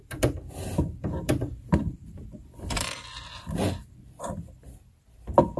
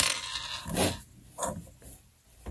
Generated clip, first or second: first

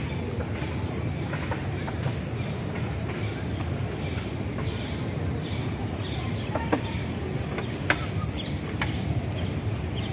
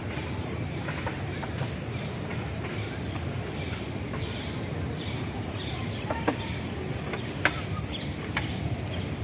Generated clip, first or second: second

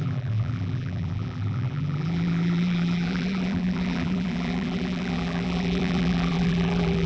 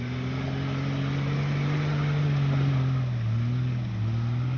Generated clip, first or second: first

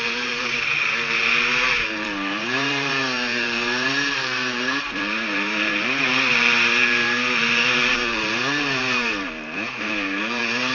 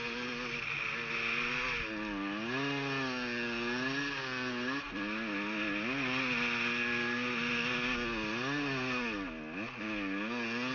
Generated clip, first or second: first